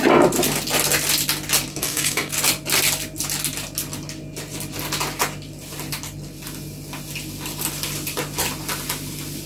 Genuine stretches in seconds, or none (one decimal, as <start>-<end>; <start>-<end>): 0.0-1.7; 2.3-9.5